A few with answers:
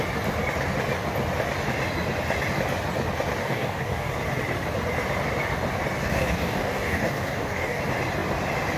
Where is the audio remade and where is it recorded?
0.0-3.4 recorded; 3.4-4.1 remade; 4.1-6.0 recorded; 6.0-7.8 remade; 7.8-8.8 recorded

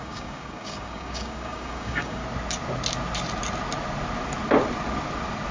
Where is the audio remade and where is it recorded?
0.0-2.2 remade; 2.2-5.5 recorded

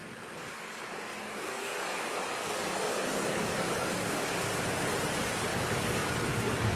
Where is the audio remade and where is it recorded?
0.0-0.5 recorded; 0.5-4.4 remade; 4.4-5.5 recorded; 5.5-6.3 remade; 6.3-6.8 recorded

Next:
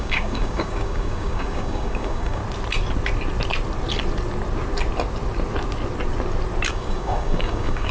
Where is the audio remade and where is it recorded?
0.0-2.4 remade; 2.4-6.7 recorded; 6.7-7.9 remade

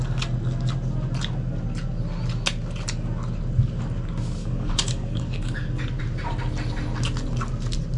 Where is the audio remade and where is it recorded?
0.0-4.4 recorded; 4.4-6.0 remade; 6.0-8.0 recorded